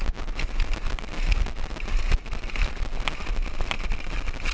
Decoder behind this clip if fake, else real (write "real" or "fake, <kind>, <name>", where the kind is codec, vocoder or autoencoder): real